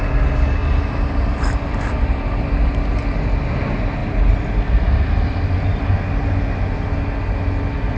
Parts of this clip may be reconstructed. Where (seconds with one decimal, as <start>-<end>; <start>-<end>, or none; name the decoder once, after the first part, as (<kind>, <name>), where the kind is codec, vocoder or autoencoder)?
0.6-2.2 (vocoder, BigVGAN v2); 4.0-5.9